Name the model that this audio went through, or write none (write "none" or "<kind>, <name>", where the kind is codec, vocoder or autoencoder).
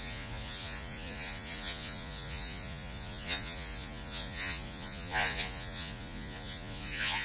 vocoder, Vocos